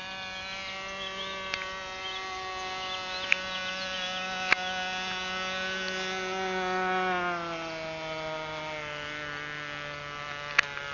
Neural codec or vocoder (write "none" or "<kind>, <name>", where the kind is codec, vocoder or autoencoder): none